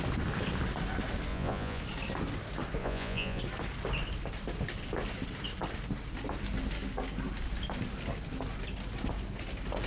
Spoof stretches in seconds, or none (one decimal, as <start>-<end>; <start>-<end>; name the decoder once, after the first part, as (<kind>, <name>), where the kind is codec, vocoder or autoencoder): 1.3-1.8 (vocoder, Vocos); 2.8-3.4